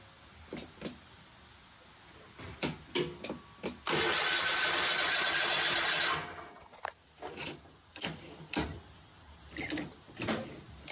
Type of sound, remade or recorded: recorded